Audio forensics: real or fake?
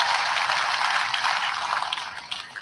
real